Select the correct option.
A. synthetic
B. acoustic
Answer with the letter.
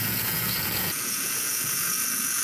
A